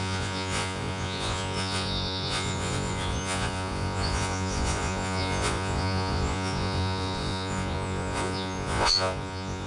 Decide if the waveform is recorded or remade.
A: remade